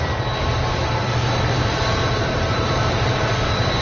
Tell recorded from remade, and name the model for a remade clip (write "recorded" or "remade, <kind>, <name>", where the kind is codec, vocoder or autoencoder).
remade, vocoder, BigVGAN v2